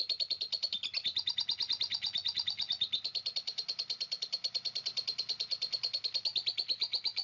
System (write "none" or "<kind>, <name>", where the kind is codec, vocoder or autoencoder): none